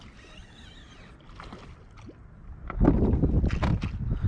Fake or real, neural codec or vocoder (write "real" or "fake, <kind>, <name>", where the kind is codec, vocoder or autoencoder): real